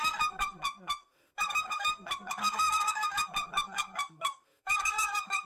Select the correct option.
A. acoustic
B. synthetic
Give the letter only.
B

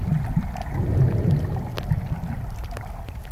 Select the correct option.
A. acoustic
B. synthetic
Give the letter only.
A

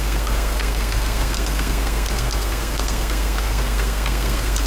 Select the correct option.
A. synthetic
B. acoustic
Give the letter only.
A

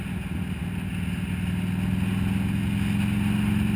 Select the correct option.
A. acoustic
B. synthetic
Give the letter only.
A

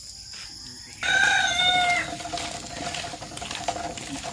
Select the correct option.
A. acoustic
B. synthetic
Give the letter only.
A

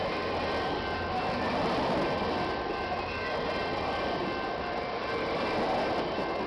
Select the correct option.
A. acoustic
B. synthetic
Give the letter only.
A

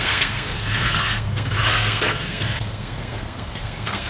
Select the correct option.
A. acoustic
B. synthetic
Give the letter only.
B